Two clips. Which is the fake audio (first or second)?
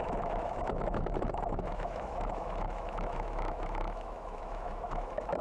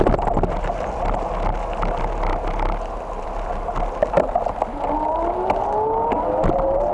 first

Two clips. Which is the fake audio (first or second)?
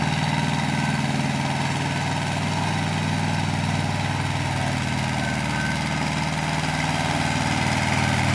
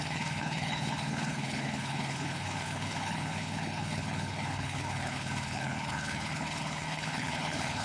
second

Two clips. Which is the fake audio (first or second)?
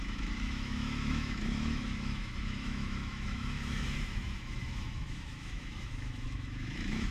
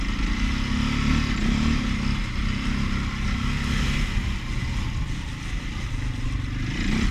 first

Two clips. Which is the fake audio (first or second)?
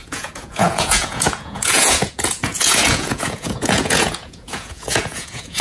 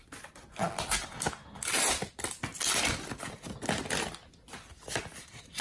first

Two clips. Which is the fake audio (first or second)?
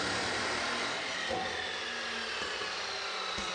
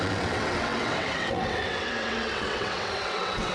second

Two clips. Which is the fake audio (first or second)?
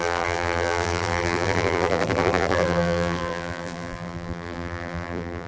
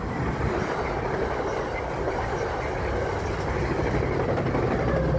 first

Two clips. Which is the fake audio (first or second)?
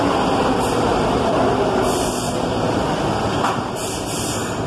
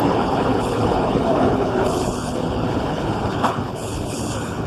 second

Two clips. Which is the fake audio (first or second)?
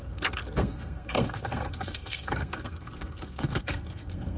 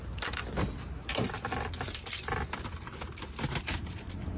first